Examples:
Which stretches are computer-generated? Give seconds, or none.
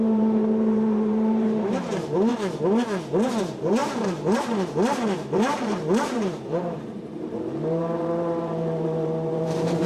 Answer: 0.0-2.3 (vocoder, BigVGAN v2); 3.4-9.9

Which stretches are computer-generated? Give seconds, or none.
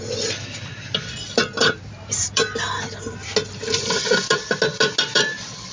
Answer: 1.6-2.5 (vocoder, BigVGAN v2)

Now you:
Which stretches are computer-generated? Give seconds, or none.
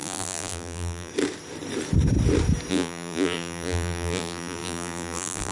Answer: 0.0-1.1 (vocoder, BigVGAN v2); 2.7-5.5